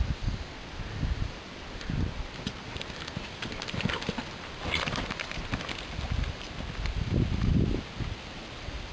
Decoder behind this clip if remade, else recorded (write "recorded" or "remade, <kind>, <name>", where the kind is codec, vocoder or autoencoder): recorded